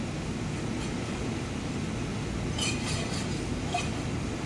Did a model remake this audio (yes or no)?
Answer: no